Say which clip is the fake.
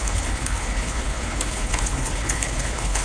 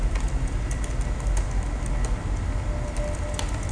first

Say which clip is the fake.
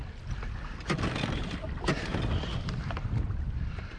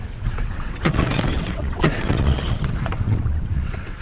second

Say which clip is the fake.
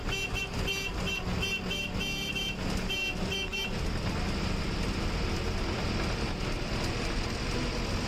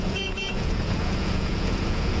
second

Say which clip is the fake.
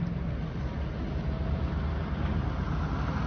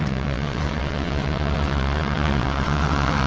second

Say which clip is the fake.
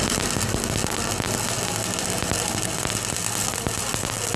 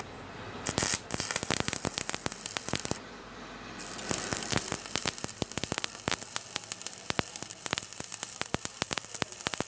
second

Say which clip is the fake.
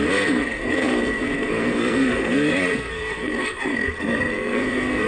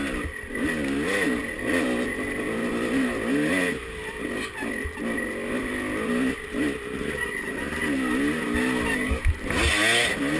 first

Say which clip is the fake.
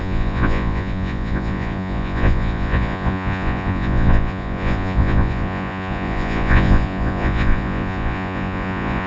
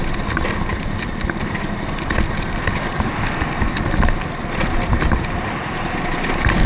first